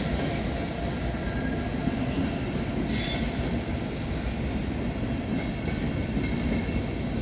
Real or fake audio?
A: real